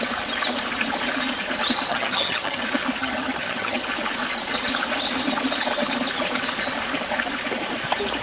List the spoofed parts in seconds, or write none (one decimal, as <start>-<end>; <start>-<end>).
1.9-2.6; 3.0-3.8